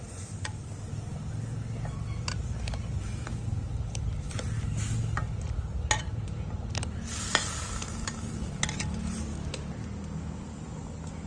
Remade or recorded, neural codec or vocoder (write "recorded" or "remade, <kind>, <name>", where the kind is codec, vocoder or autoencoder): recorded